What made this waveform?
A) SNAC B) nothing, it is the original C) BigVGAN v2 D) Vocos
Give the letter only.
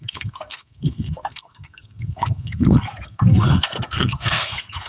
A